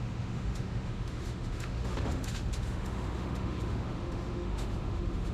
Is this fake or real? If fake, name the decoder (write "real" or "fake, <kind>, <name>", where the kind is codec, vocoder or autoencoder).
fake, autoencoder, DAC-VAE